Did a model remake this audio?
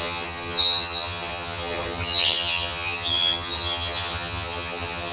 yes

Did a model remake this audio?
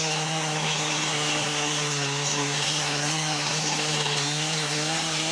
yes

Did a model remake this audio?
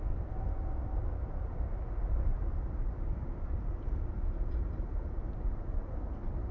yes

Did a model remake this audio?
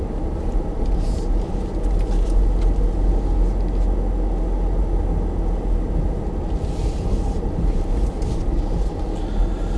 no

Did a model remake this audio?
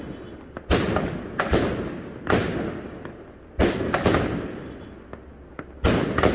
no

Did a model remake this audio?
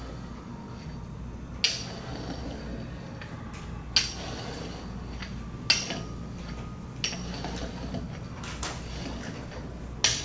no